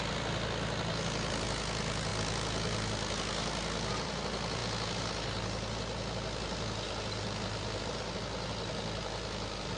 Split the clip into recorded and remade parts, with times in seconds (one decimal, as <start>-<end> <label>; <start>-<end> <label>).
0.0-9.8 recorded